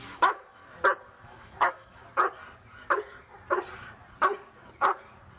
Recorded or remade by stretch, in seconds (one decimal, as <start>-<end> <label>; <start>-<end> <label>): 0.0-0.6 remade; 0.6-1.2 recorded; 1.2-2.0 remade; 2.0-5.4 recorded